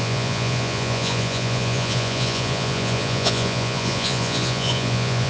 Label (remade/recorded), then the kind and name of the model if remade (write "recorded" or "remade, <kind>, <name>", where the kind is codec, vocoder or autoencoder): remade, vocoder, Vocos